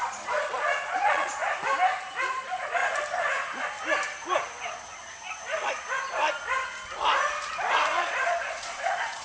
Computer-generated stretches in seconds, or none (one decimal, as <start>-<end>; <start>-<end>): 0.0-1.4; 2.3-2.8; 8.0-9.2